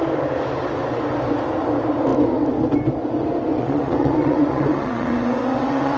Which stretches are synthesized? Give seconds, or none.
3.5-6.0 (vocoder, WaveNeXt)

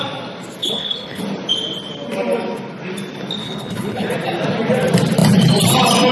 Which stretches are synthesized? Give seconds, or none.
0.6-1.2 (codec, HILCodec); 3.4-4.1

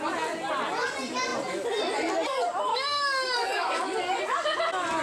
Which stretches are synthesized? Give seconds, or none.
2.7-4.2 (codec, DAC)

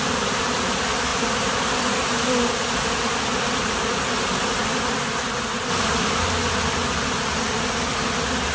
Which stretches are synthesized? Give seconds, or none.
none